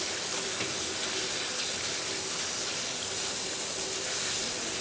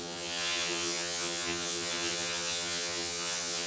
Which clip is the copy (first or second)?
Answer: second